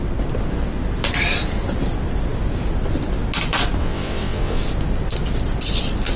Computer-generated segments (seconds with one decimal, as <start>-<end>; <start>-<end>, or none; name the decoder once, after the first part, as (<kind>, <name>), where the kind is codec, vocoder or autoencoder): 3.8-4.6 (vocoder, WaveNeXt)